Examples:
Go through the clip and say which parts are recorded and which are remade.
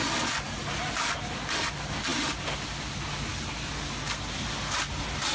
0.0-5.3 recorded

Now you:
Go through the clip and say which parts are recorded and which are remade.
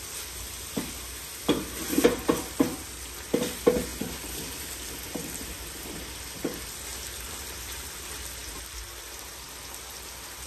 0.0-10.5 recorded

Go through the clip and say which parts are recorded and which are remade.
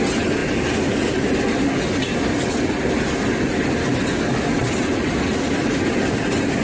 0.0-6.6 recorded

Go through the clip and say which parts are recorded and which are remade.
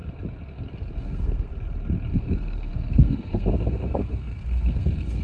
0.0-1.0 recorded; 1.0-1.5 remade; 1.5-2.1 recorded; 2.1-5.2 remade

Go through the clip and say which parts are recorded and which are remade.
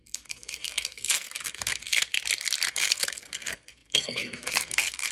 0.0-2.1 remade; 2.1-2.7 recorded; 2.7-5.1 remade